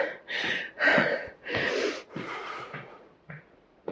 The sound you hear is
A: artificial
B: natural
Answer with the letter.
A